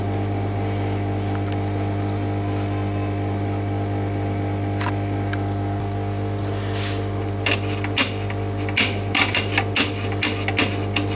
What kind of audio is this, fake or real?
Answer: real